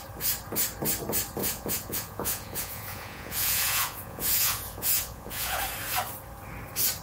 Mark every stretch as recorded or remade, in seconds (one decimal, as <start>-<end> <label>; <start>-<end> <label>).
0.0-1.4 recorded; 1.4-5.6 remade; 5.6-7.0 recorded